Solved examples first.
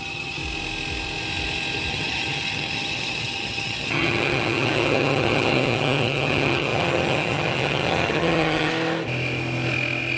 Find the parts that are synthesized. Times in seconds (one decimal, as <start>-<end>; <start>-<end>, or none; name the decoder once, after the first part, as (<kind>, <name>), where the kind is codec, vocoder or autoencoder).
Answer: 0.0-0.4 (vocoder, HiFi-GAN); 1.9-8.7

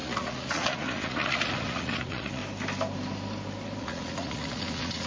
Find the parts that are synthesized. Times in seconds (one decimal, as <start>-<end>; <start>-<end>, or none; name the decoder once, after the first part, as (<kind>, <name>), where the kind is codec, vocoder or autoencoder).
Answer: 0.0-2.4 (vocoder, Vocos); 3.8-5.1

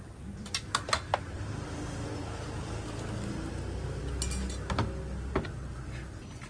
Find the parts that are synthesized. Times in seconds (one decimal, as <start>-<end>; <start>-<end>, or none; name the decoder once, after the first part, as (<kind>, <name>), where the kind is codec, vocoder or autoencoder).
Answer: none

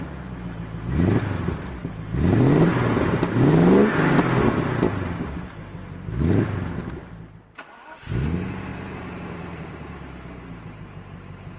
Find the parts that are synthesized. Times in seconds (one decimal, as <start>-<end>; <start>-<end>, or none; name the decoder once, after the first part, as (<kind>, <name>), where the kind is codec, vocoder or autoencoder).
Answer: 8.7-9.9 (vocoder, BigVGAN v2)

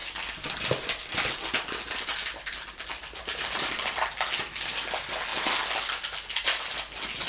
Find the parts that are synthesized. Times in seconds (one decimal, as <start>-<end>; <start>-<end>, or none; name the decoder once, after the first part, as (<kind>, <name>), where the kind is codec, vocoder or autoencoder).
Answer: 0.0-3.9 (vocoder, BigVGAN v2); 5.3-6.0

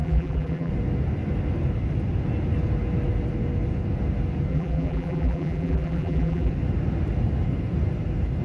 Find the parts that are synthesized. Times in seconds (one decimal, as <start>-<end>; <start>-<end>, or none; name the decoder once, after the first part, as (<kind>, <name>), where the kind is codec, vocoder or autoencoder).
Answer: 0.0-0.7 (vocoder, BigVGAN v2); 4.5-6.5

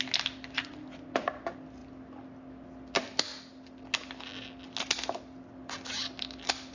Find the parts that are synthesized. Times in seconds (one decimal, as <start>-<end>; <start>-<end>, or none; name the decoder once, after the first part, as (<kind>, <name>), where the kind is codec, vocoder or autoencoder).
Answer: none